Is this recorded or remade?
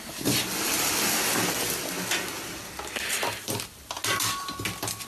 recorded